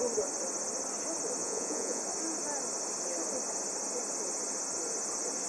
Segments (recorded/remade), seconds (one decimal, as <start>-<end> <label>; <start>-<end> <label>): 0.0-1.4 recorded; 1.4-2.0 remade; 2.0-5.5 recorded